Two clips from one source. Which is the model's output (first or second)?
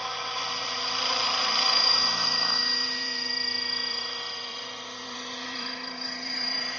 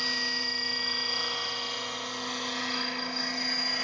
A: first